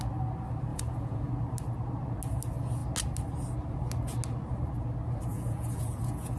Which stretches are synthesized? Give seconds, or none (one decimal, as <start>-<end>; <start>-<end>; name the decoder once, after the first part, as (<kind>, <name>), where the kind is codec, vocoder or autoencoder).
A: 0.7-1.3 (vocoder, Vocos); 5.3-6.4